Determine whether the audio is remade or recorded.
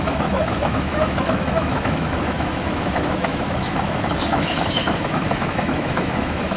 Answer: remade